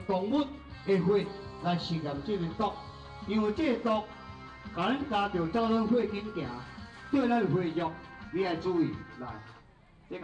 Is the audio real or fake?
real